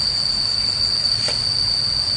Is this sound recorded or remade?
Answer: recorded